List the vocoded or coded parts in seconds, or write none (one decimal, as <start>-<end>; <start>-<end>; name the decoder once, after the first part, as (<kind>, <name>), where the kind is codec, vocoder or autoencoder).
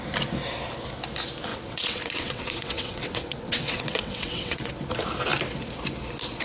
1.5-4.7 (vocoder, WaveNeXt)